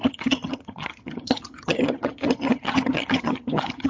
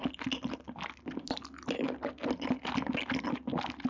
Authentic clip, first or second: second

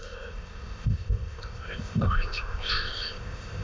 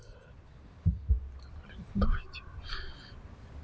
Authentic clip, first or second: second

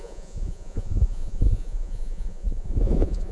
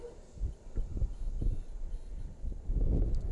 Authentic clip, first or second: second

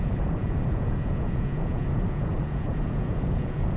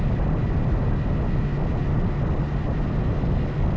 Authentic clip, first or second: second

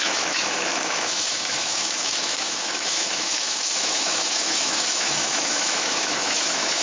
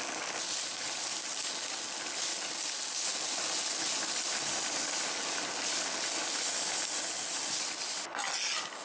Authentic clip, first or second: second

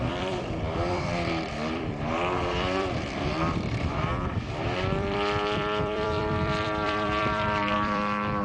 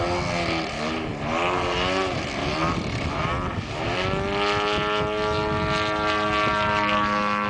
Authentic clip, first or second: second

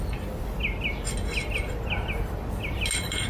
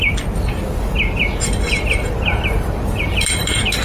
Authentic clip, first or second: first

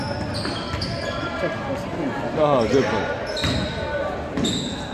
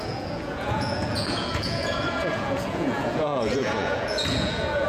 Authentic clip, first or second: first